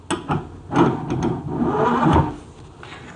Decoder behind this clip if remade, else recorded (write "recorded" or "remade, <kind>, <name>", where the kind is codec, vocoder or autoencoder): recorded